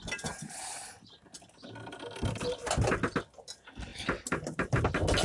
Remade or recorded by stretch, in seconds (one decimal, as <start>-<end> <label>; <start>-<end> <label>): 0.0-5.2 recorded